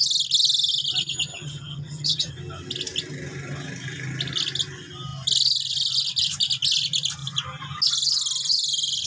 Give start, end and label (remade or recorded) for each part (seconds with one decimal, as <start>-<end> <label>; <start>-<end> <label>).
0.0-1.3 recorded; 1.3-2.3 remade; 2.3-9.1 recorded